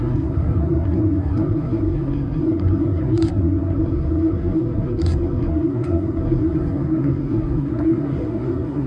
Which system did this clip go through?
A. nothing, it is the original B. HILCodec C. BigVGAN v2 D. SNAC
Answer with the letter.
D